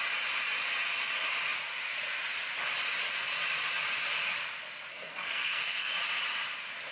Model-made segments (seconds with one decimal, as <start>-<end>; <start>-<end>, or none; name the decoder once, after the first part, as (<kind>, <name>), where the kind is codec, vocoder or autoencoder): 4.9-6.0 (codec, SNAC)